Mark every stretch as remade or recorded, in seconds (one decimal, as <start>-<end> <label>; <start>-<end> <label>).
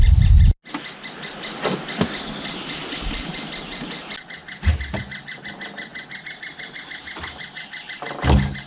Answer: 0.0-8.7 recorded